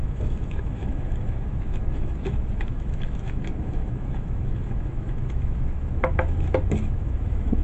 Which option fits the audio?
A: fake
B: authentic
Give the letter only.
A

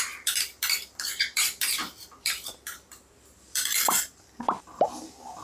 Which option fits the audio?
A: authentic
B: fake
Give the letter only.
B